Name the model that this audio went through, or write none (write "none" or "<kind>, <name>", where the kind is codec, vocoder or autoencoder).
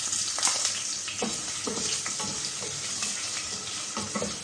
none